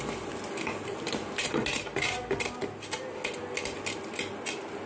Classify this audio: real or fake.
real